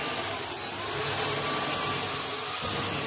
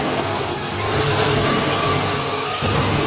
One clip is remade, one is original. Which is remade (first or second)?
second